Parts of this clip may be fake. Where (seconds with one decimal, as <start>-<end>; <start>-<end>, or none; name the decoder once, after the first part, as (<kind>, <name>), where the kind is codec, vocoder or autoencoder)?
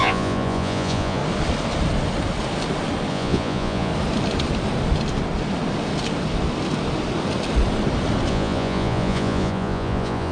0.0-1.2 (vocoder, Vocos); 3.1-3.9; 8.3-10.3